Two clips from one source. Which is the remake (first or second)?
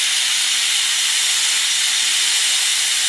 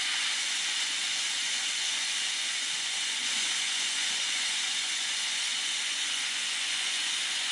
second